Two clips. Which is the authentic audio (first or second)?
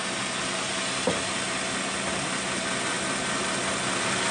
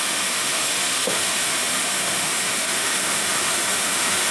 first